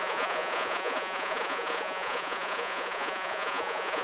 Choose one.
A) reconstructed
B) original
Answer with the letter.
A